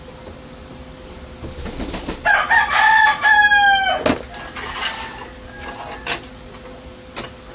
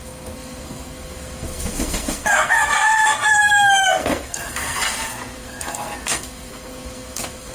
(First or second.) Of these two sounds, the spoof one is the second